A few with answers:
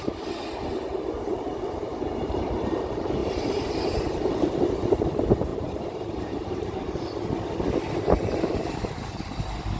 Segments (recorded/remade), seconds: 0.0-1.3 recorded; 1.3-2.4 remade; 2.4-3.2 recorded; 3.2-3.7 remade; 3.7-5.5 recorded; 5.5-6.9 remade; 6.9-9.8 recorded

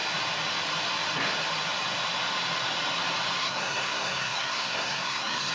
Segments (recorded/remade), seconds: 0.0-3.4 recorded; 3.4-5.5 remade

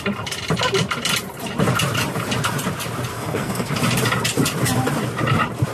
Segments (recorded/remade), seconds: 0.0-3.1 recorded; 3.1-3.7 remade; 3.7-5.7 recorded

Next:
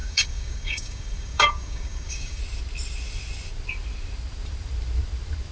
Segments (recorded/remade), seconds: 0.0-2.4 remade; 2.4-5.5 recorded

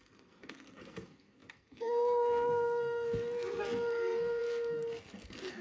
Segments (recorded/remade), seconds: 0.0-5.6 remade

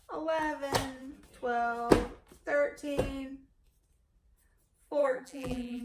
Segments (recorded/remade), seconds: 0.0-5.0 recorded; 5.0-5.8 remade

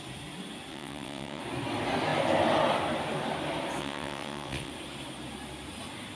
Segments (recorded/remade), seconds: 0.0-0.7 recorded; 0.7-1.4 remade; 1.4-3.8 recorded; 3.8-4.7 remade; 4.7-6.2 recorded

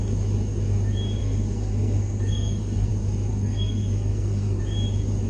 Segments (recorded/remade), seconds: 0.0-1.2 recorded; 1.2-2.9 remade; 2.9-3.3 recorded; 3.3-4.6 remade; 4.6-5.3 recorded